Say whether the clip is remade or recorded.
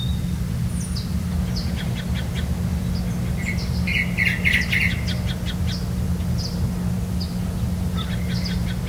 recorded